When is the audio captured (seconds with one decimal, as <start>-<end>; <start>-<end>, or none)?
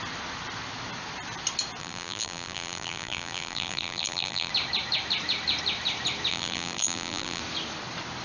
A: 0.0-1.8; 4.5-6.3; 7.4-8.2